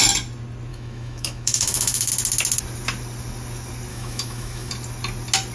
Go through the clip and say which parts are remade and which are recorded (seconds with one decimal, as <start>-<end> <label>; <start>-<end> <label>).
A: 0.0-0.7 recorded; 0.7-2.1 remade; 2.1-3.9 recorded; 3.9-4.7 remade; 4.7-5.5 recorded